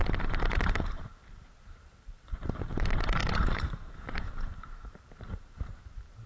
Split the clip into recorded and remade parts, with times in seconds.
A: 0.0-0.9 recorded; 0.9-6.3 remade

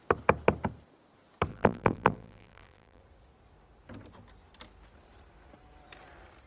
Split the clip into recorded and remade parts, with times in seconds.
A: 0.0-1.5 recorded; 1.5-3.0 remade; 3.0-6.5 recorded

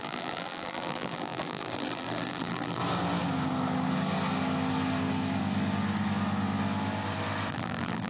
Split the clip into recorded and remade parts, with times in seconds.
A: 0.0-2.8 remade; 2.8-7.5 recorded; 7.5-8.1 remade

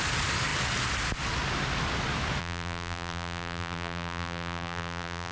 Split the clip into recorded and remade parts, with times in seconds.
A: 0.0-2.4 recorded; 2.4-5.3 remade